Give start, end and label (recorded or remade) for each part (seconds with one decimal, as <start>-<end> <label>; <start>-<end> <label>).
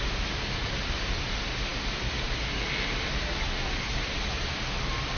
0.0-5.2 recorded